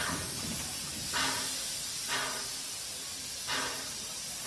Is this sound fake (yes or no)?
no